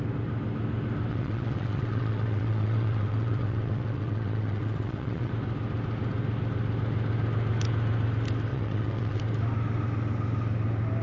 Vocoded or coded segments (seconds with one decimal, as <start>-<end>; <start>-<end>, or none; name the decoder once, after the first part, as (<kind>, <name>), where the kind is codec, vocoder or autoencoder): 1.1-5.3 (vocoder, WaveNeXt); 8.5-9.2